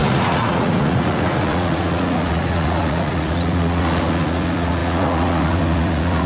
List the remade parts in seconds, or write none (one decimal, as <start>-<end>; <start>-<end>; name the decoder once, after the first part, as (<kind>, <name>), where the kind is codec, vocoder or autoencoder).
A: 0.0-6.3 (vocoder, Vocos)